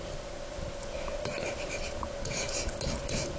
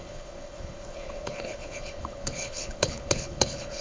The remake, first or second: second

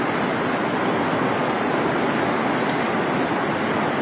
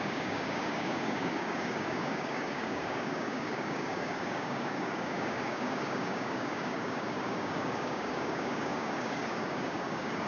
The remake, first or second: second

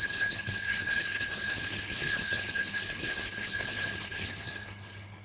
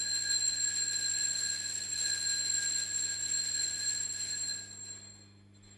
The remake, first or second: first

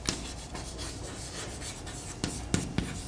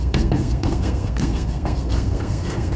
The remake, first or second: second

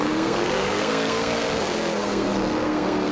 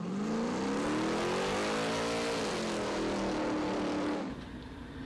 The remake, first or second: first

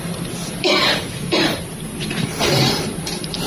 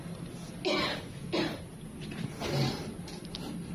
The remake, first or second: first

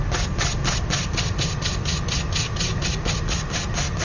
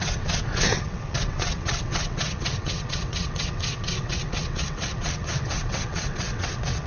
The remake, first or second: second